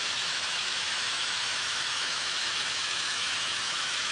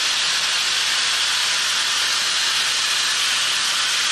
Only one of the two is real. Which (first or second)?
second